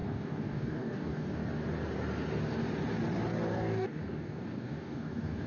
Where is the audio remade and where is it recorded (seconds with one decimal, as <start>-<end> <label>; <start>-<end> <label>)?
0.0-1.4 remade; 1.4-3.5 recorded; 3.5-5.5 remade

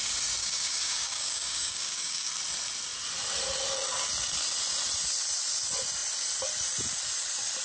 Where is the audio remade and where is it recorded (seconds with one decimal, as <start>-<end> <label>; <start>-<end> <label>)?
0.0-0.4 recorded; 0.4-2.3 remade; 2.3-7.6 recorded

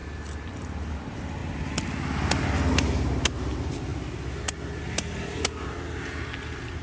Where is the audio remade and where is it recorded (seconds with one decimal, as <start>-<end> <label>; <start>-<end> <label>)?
0.0-6.8 recorded

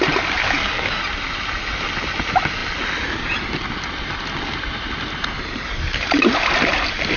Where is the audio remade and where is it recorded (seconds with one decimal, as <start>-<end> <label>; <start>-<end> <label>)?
0.0-0.4 recorded; 0.4-1.0 remade; 1.0-7.2 recorded

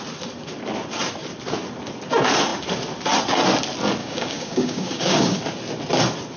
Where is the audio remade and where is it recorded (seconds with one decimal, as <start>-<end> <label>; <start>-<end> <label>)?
0.0-4.0 recorded; 4.0-5.4 remade; 5.4-6.4 recorded

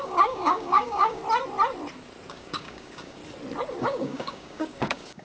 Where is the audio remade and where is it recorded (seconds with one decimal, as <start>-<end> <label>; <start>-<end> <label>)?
0.0-1.2 remade; 1.2-2.3 recorded; 2.3-3.2 remade; 3.2-3.8 recorded; 3.8-5.2 remade

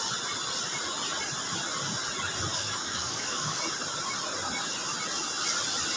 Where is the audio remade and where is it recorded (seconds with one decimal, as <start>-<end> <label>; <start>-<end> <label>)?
0.0-2.5 recorded; 2.5-3.6 remade; 3.6-6.0 recorded